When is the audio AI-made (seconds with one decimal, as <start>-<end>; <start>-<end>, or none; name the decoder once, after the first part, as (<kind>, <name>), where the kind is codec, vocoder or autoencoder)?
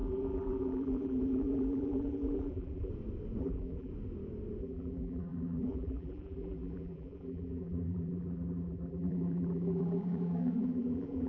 0.0-2.9 (vocoder, BigVGAN v2); 3.4-3.9; 4.6-11.3